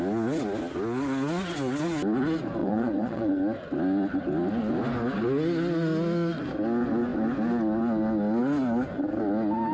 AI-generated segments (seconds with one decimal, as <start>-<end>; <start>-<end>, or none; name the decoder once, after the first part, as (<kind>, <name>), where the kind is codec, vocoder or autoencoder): 2.6-3.3 (vocoder, WaveNeXt)

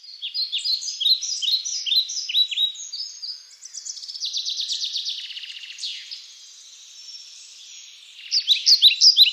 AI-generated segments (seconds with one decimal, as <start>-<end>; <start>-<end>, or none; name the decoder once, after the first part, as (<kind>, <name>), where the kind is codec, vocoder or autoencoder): none